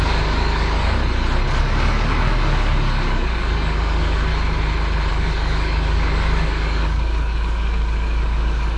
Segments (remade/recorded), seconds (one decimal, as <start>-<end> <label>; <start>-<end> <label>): 0.0-1.0 remade; 1.0-1.6 recorded; 1.6-4.3 remade; 4.3-5.1 recorded; 5.1-8.8 remade